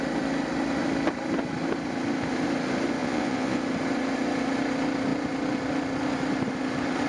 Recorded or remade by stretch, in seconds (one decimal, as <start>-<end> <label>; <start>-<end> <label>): 0.0-3.0 recorded; 3.0-3.6 remade; 3.6-7.1 recorded